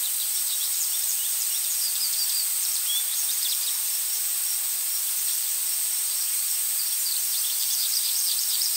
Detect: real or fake fake